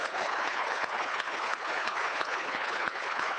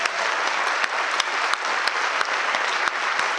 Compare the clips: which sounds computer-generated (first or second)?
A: first